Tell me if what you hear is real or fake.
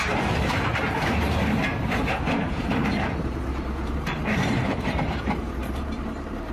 fake